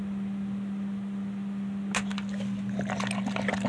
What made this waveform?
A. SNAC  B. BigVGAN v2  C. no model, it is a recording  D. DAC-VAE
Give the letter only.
C